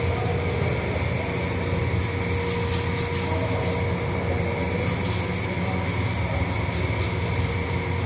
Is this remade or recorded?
recorded